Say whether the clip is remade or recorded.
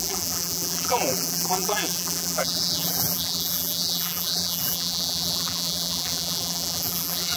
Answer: remade